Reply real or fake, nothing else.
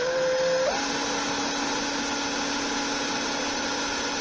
real